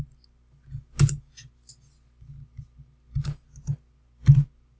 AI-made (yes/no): no